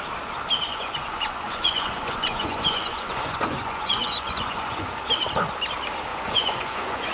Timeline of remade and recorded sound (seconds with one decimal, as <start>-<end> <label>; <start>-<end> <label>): 0.0-0.7 recorded; 0.7-5.0 remade; 5.0-6.1 recorded; 6.1-7.1 remade